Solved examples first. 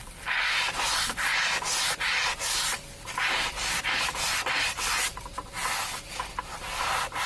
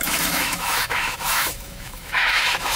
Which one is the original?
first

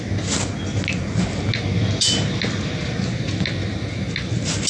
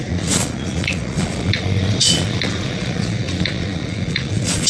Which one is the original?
first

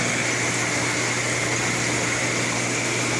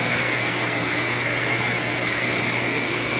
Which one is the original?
first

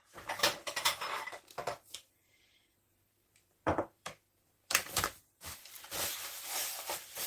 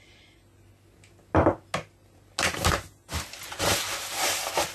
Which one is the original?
second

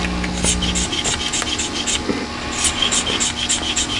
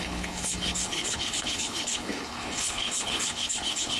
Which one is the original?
first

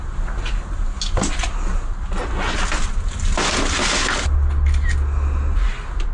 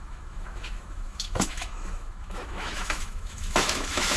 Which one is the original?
first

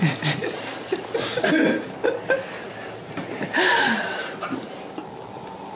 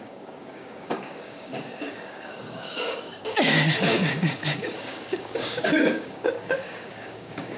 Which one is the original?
first